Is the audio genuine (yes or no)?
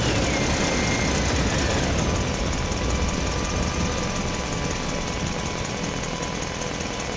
yes